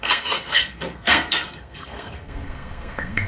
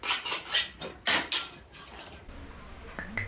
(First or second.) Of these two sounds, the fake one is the first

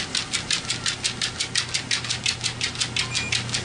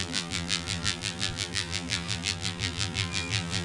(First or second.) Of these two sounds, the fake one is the second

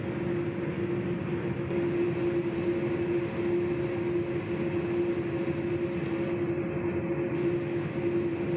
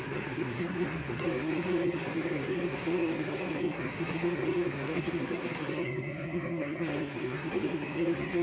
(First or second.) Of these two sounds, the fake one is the second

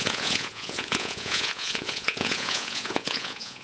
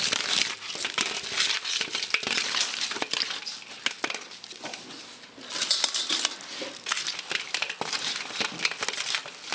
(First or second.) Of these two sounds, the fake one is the first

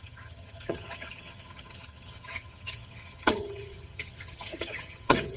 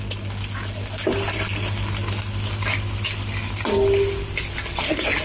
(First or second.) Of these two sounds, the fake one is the first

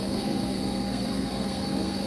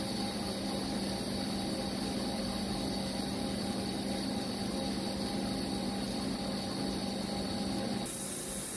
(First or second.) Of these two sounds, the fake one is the first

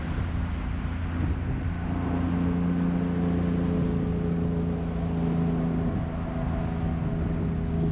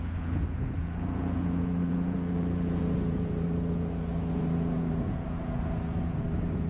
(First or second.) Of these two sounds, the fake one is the second